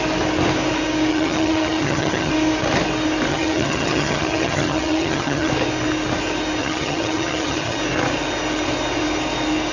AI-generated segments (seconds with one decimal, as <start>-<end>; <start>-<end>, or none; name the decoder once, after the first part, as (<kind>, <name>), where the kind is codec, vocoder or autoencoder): 1.1-2.3 (vocoder, HiFi-GAN); 3.3-5.5; 6.6-7.8